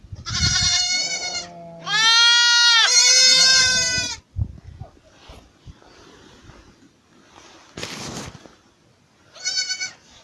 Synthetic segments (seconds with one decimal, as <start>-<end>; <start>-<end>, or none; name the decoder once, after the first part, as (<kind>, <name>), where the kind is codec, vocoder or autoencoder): none